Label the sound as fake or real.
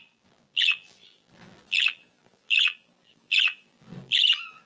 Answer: fake